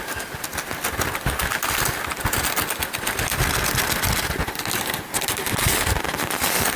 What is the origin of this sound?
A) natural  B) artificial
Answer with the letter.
A